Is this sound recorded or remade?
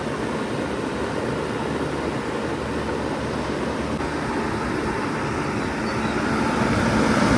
recorded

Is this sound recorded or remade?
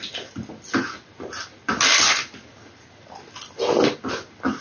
recorded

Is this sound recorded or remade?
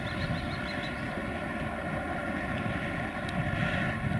recorded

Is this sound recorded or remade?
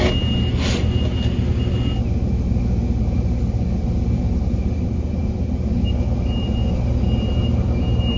recorded